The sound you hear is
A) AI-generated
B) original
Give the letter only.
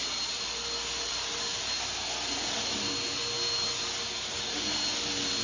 B